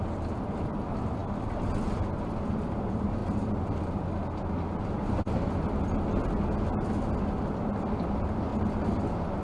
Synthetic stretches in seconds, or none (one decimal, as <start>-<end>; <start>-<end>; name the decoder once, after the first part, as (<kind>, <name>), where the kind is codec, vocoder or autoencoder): 3.2-3.8 (vocoder, BigVGAN v2); 8.5-9.4